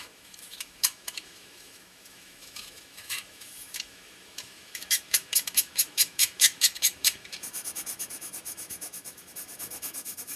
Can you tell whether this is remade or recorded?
remade